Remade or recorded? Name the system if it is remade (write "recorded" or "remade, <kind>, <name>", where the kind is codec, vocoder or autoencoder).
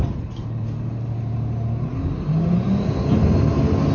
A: recorded